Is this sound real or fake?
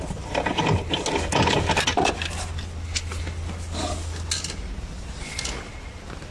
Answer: real